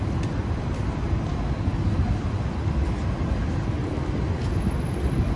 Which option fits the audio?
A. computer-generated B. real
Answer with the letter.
B